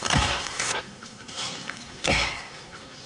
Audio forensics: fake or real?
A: fake